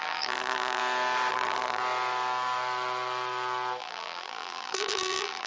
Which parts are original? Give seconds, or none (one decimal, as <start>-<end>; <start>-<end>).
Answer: 0.8-1.3; 1.8-3.8